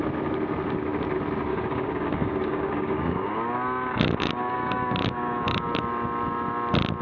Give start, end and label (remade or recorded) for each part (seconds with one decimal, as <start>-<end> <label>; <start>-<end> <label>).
0.0-1.5 recorded; 1.5-5.7 remade; 5.7-7.0 recorded